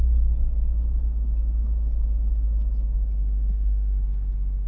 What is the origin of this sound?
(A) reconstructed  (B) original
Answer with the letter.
B